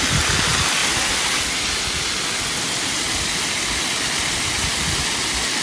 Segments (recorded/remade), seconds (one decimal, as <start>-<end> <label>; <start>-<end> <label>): 0.0-5.6 recorded